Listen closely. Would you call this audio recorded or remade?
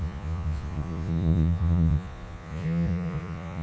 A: remade